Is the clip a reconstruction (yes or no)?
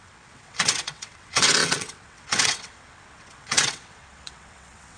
yes